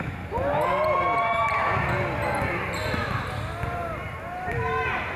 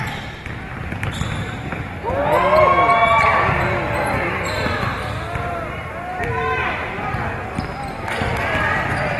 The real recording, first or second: first